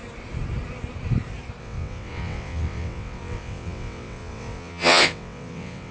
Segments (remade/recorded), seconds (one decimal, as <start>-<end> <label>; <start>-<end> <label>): 0.0-1.6 recorded; 1.6-5.9 remade